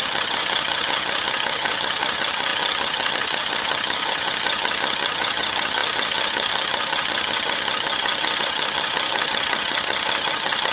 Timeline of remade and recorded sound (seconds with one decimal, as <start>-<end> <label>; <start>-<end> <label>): 0.0-10.7 remade